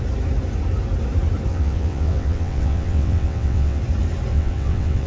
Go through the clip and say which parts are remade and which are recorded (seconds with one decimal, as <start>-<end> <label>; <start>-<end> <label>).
0.0-1.5 recorded; 1.5-3.8 remade; 3.8-4.3 recorded; 4.3-5.1 remade

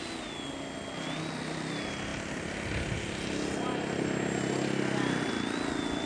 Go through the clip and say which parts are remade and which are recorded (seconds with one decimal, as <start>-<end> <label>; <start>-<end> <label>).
0.0-6.1 recorded

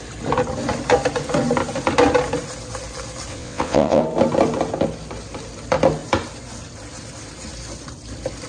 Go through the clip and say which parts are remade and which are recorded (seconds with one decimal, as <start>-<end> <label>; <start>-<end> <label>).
0.0-3.3 recorded; 3.3-4.0 remade; 4.0-8.5 recorded

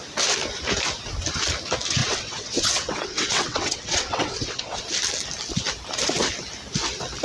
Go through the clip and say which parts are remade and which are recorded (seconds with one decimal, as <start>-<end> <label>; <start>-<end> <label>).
0.0-2.0 recorded; 2.0-4.8 remade; 4.8-7.2 recorded

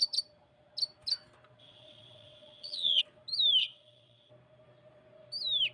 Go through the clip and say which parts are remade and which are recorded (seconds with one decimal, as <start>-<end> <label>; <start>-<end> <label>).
0.0-1.6 recorded; 1.6-3.0 remade; 3.0-3.6 recorded; 3.6-4.3 remade; 4.3-5.7 recorded